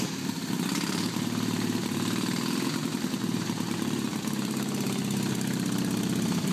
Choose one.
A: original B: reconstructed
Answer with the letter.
B